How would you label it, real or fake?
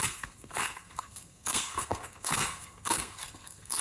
fake